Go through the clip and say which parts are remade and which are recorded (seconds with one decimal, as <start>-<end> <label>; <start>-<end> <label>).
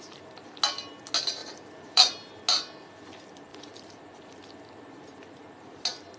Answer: 0.0-1.4 recorded; 1.4-2.4 remade; 2.4-3.5 recorded; 3.5-4.0 remade; 4.0-6.2 recorded